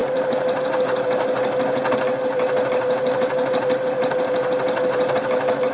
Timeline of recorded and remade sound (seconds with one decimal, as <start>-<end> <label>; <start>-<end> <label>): 0.0-0.8 remade; 0.8-5.7 recorded